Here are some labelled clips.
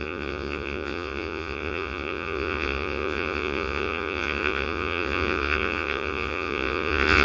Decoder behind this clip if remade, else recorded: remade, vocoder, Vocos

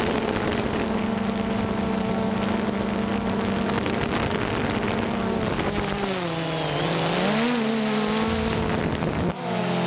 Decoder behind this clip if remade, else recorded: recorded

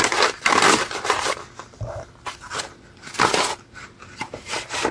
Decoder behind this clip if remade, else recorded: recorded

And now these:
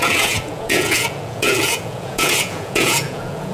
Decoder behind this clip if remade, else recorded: remade, vocoder, Vocos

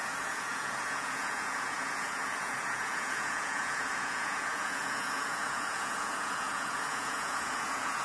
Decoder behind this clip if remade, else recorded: remade, vocoder, Vocos